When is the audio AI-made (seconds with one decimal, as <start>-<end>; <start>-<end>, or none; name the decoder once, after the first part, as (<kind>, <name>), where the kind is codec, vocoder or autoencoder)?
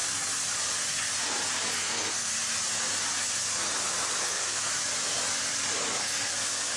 1.7-2.3 (codec, SNAC); 4.2-4.7; 6.0-6.8